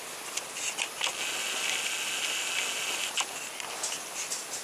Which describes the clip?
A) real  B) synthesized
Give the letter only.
A